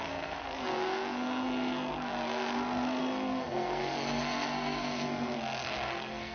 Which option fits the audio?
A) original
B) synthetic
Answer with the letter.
B